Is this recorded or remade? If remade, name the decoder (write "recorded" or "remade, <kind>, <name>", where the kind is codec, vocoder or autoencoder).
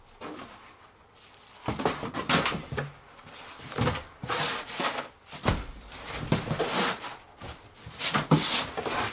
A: recorded